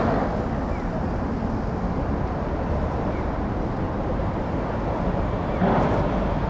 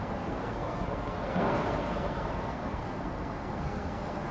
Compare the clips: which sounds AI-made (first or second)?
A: second